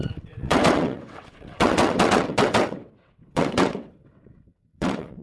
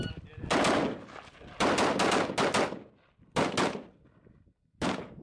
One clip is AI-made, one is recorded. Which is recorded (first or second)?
second